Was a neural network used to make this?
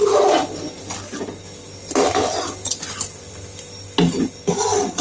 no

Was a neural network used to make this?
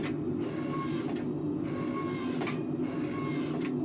no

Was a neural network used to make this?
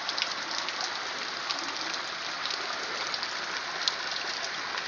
no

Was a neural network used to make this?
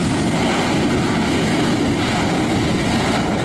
no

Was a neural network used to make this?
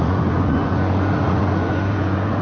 yes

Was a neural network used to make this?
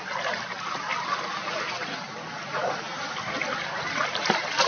no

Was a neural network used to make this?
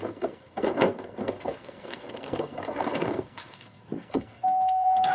yes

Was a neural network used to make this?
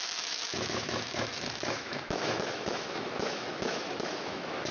yes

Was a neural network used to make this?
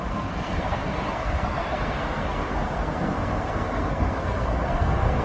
yes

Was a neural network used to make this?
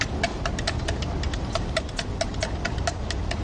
no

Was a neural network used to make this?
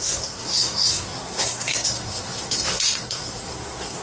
yes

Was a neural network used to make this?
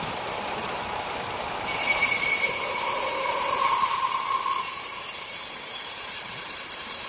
yes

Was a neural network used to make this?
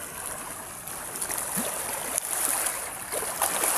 yes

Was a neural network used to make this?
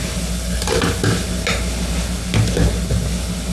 no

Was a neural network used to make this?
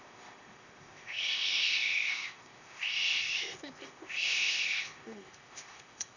yes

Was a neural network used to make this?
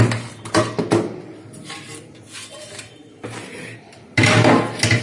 no